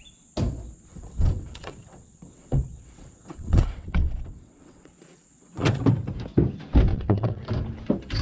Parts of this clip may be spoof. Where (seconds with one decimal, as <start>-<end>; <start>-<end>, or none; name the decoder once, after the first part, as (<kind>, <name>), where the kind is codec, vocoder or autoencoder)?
0.9-5.8 (vocoder, WaveNeXt); 6.9-7.4